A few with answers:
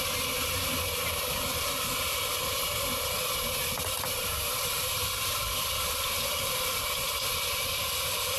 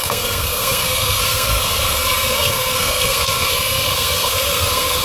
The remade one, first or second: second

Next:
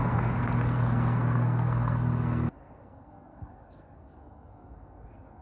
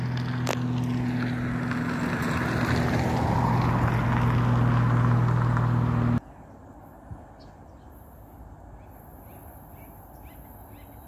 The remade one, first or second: first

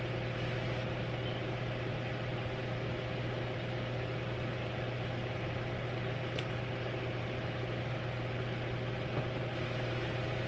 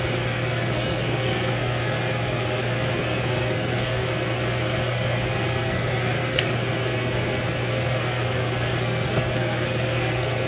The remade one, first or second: second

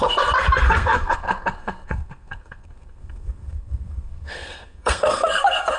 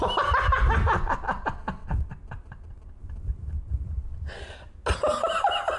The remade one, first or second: first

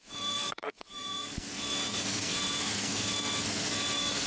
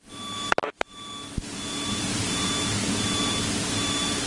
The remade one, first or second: first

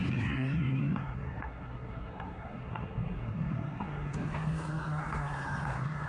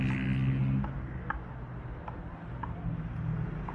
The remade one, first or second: first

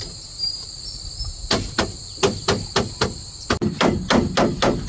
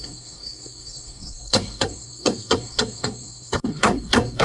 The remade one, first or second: second